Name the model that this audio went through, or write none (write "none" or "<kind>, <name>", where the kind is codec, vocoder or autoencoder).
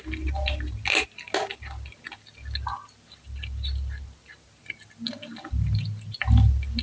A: none